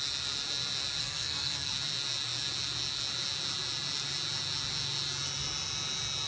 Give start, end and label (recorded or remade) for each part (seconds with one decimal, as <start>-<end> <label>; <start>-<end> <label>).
0.0-1.0 recorded; 1.0-1.7 remade; 1.7-6.3 recorded